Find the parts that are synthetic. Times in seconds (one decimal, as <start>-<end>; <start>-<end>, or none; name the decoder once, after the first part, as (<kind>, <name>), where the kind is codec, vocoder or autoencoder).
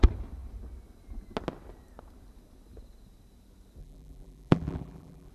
3.8-5.3 (vocoder, BigVGAN v2)